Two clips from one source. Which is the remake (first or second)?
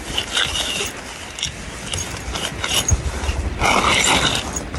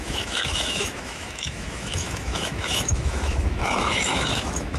second